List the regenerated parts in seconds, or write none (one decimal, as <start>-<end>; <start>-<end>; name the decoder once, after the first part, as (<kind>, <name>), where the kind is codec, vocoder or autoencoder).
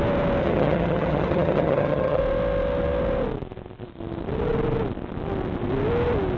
0.4-2.2 (vocoder, HiFi-GAN)